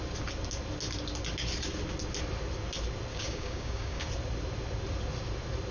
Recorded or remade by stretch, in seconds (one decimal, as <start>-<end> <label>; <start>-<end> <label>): 0.0-3.1 recorded; 3.1-4.1 remade; 4.1-5.7 recorded